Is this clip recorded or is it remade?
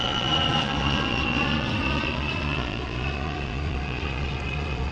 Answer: remade